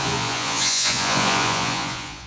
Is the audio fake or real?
fake